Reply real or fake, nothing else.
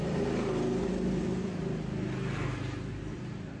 real